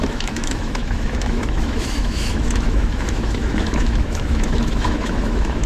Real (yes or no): no